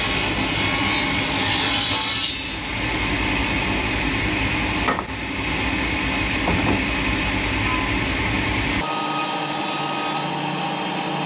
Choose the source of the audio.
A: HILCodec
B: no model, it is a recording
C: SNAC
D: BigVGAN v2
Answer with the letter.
B